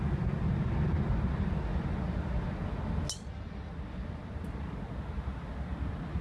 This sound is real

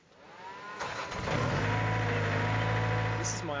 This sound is real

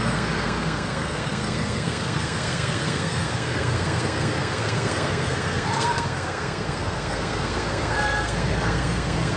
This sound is fake